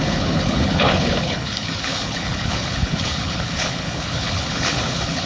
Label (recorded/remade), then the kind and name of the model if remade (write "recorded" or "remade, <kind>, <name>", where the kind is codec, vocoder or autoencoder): remade, codec, HILCodec